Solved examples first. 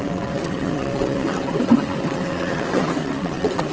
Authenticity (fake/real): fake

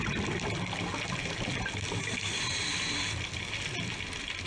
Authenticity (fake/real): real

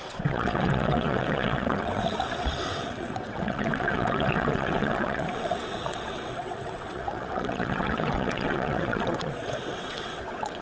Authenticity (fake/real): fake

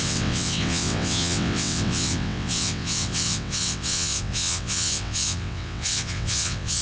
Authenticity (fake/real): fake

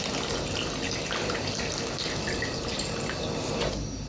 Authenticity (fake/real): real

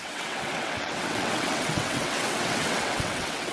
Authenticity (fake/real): fake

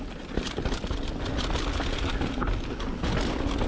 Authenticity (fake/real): real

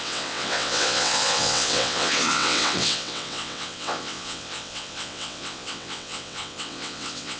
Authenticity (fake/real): fake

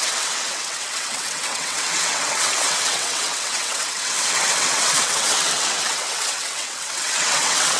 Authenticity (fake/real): fake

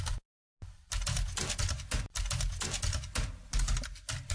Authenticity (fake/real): real